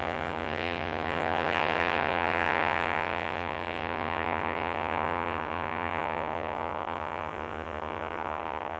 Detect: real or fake fake